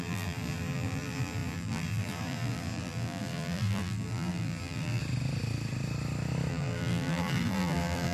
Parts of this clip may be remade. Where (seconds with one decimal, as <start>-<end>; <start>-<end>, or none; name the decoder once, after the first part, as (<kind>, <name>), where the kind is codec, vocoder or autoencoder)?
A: 0.0-5.0 (vocoder, BigVGAN v2); 6.5-8.1

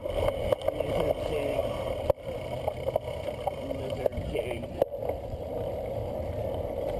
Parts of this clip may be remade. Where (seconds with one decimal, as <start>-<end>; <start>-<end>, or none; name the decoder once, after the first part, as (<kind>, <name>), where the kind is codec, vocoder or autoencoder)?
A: 4.7-5.5 (vocoder, BigVGAN v2)

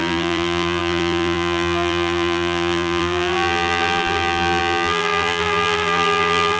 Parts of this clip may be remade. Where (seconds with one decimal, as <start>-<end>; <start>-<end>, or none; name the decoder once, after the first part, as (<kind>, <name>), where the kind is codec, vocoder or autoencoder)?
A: 0.0-6.6 (vocoder, BigVGAN v2)